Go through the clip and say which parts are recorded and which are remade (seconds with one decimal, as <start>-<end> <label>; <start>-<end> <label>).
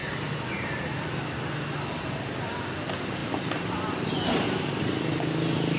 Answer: 0.0-3.2 recorded; 3.2-4.1 remade; 4.1-5.8 recorded